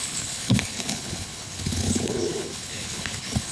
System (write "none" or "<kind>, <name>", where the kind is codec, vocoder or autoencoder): codec, HILCodec